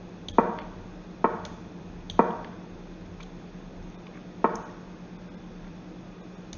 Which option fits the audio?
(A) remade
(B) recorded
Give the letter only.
B